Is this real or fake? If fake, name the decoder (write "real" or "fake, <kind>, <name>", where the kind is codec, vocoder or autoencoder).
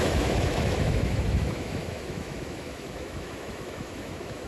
fake, autoencoder, DAC-VAE